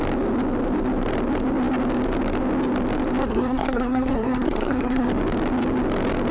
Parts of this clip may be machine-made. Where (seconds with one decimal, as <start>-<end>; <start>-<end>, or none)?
3.2-5.1